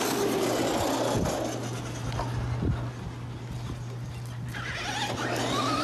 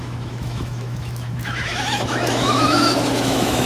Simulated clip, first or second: second